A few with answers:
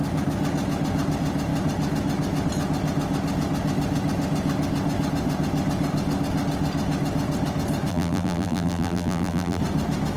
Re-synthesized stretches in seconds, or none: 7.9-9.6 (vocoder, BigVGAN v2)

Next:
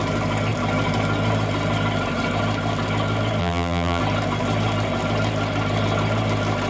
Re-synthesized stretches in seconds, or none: 3.4-4.0 (vocoder, BigVGAN v2)

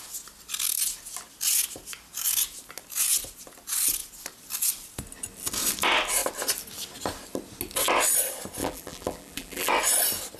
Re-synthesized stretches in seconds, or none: 8.6-9.7 (vocoder, BigVGAN v2)

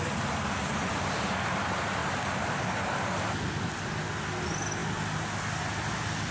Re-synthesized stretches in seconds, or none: 2.0-2.9 (vocoder, BigVGAN v2); 4.8-5.4